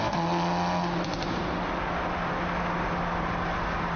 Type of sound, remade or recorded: recorded